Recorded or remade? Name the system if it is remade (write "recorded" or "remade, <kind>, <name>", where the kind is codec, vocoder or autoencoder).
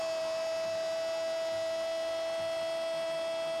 recorded